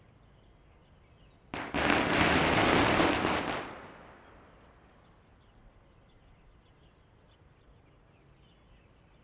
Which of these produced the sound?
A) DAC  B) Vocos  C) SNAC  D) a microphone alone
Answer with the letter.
D